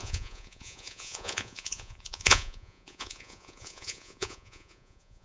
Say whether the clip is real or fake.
fake